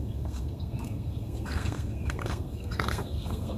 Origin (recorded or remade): remade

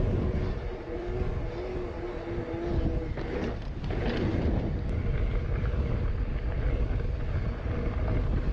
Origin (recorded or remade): recorded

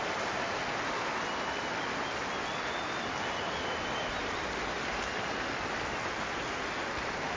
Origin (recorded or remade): recorded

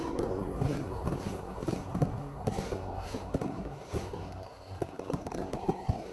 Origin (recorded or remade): remade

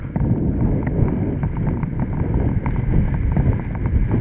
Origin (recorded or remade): recorded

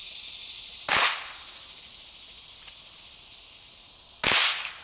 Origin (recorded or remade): recorded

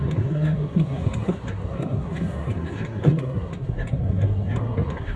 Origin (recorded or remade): remade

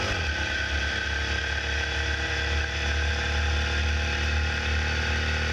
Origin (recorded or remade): recorded